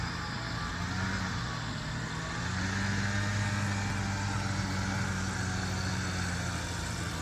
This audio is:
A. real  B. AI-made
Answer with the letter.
A